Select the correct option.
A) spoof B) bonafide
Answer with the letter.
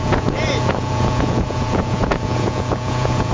A